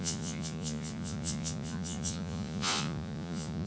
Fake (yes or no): yes